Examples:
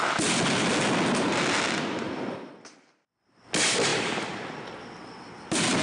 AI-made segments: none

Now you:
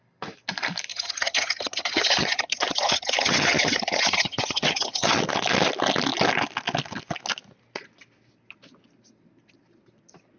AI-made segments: 0.9-5.2 (vocoder, HiFi-GAN)

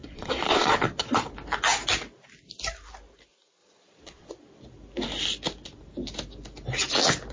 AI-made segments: 0.0-1.3 (vocoder, Vocos); 3.6-4.3

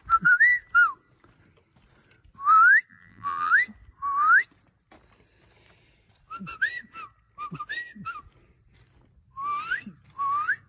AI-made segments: 2.9-3.5 (vocoder, BigVGAN v2)